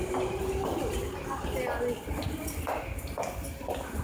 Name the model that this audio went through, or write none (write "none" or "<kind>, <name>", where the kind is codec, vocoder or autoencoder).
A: none